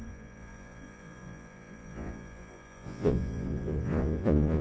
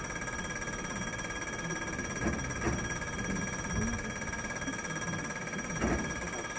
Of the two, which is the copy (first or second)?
first